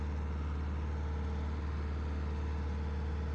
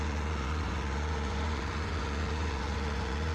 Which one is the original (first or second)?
first